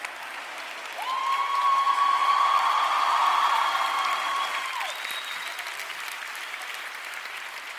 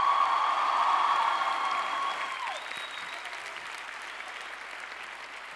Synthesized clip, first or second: first